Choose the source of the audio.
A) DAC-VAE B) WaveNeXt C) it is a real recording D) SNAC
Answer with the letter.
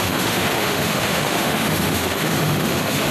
A